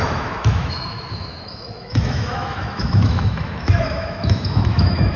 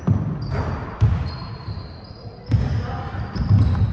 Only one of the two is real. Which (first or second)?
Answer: second